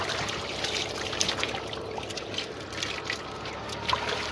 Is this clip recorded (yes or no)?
yes